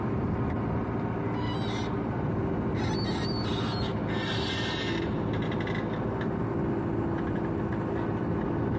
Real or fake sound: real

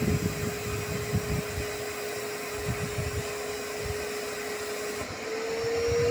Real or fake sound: real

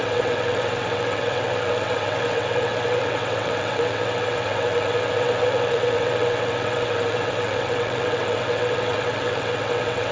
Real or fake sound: fake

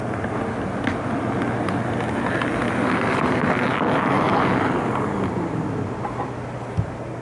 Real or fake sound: real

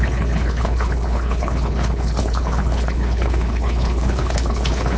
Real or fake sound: fake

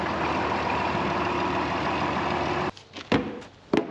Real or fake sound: real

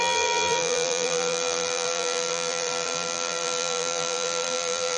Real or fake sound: fake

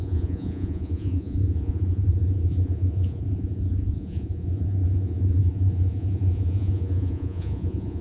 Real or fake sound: fake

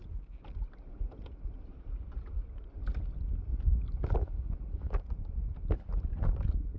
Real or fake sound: real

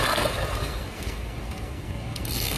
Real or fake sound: fake